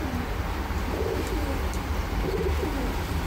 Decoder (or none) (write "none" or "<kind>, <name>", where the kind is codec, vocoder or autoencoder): vocoder, BigVGAN v2